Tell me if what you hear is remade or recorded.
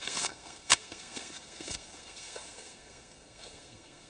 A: remade